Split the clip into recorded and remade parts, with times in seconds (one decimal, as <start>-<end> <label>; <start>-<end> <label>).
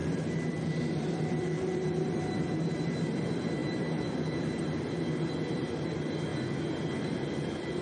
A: 0.0-6.3 remade; 6.3-7.0 recorded; 7.0-7.8 remade